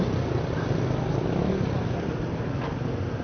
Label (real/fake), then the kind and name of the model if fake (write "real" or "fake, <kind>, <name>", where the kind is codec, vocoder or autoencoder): real